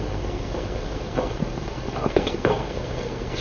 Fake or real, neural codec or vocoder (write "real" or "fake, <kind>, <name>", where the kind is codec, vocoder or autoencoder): fake, codec, SNAC